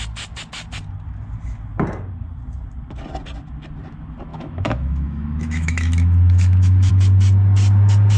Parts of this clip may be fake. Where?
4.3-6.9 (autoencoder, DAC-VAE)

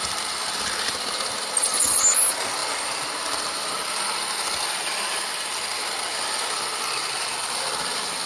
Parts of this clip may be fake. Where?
none

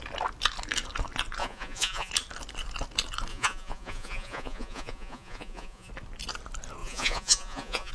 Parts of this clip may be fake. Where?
1.4-2.1 (vocoder, Vocos); 3.3-5.9; 6.8-7.9

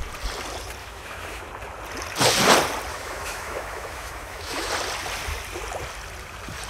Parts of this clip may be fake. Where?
0.8-1.5 (autoencoder, DAC-VAE); 2.9-4.7

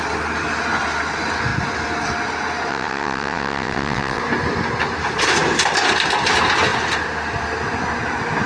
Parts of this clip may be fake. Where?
2.7-4.2 (vocoder, WaveNeXt)

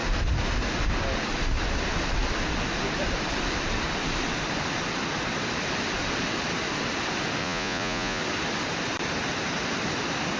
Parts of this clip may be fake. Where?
7.4-8.2 (vocoder, Vocos)

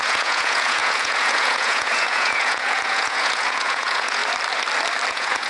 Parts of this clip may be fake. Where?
0.0-4.2 (vocoder, Vocos); 5.1-5.5